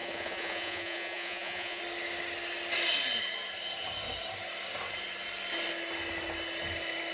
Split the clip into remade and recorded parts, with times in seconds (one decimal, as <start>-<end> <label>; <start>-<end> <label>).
0.0-1.8 remade; 1.8-7.1 recorded